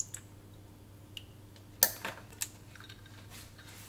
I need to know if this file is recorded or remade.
recorded